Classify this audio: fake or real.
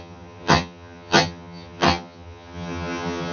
fake